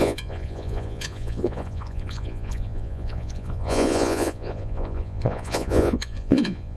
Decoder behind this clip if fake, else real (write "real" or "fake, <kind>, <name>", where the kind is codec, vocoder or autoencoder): fake, vocoder, Vocos